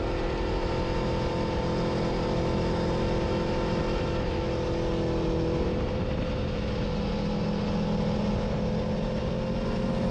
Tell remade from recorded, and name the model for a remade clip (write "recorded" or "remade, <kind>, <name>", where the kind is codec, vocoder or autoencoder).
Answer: recorded